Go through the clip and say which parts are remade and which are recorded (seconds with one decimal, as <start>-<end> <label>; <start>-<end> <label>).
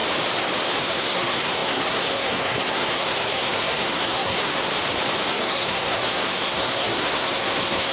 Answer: 0.0-0.8 recorded; 0.8-4.7 remade; 4.7-5.3 recorded; 5.3-7.9 remade